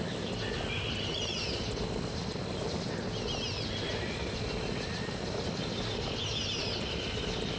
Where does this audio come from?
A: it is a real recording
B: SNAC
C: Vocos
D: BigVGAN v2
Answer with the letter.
A